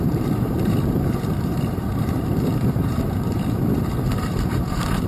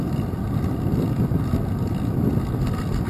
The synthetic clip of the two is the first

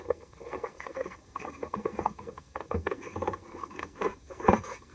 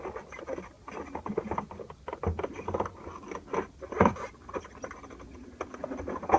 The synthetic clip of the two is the first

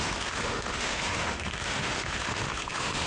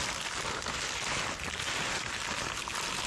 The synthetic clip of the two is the first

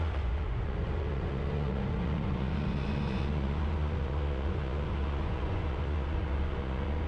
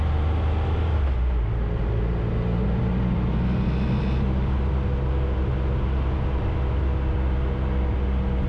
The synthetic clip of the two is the first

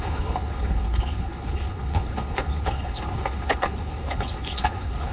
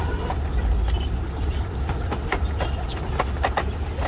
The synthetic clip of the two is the first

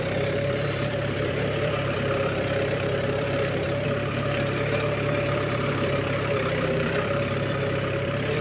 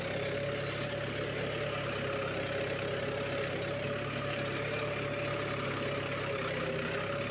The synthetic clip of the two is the first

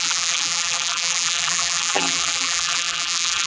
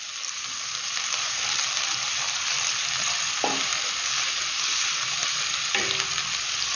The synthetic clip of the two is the first